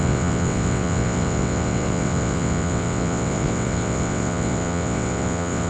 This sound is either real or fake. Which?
fake